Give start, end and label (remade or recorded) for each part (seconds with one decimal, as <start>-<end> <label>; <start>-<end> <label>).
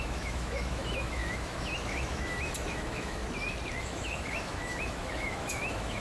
0.0-3.2 remade; 3.2-3.8 recorded; 3.8-6.0 remade